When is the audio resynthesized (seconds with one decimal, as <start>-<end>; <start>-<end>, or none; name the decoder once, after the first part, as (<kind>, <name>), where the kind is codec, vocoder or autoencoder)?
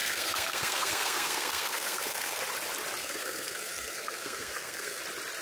0.0-2.4 (codec, SNAC); 3.0-5.0